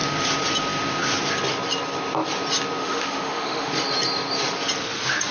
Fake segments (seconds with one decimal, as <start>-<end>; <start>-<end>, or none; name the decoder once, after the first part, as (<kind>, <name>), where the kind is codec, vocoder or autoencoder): 2.8-3.7 (autoencoder, DAC-VAE)